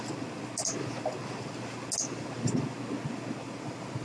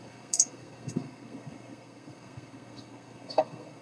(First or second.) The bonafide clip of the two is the first